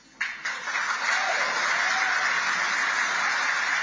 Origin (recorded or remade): recorded